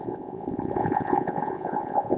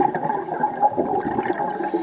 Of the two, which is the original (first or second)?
second